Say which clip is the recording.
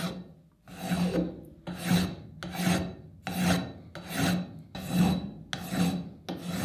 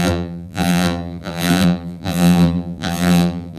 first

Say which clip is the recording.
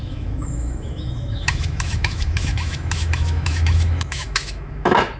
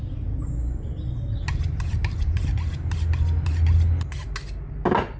second